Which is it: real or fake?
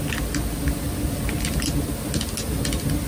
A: real